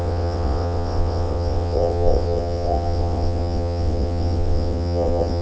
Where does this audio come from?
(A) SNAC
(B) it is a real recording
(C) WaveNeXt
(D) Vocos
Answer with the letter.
C